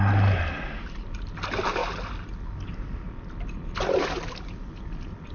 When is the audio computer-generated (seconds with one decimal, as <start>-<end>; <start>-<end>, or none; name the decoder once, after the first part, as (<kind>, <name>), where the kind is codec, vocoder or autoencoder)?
none